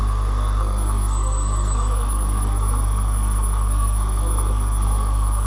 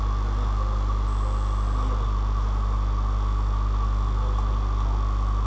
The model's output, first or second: first